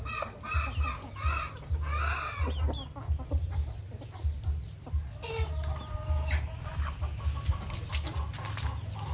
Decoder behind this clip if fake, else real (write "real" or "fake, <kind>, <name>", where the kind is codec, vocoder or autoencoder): real